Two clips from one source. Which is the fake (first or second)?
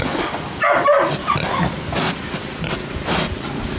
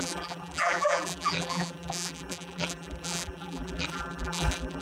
second